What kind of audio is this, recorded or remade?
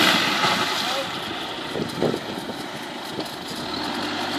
recorded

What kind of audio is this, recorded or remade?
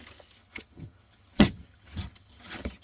remade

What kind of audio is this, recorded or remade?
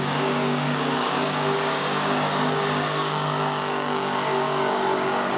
remade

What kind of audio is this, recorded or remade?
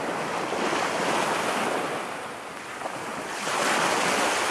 recorded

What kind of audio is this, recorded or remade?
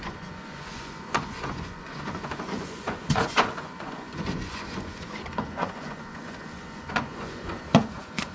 remade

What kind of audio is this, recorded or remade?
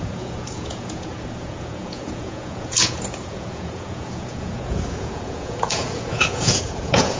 remade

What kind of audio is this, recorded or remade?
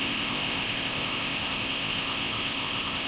remade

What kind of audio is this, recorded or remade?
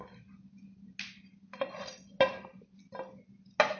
recorded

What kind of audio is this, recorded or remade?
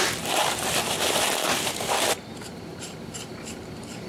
remade